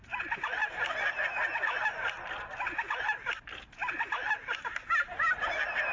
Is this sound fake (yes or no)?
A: no